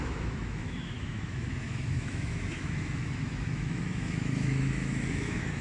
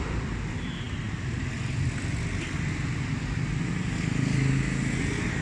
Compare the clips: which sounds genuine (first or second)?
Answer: second